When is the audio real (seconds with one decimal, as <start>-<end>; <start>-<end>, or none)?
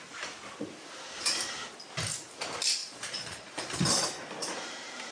0.0-2.8; 3.6-5.1